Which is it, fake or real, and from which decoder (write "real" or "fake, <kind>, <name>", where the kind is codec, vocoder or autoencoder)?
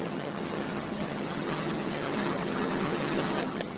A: fake, vocoder, HiFi-GAN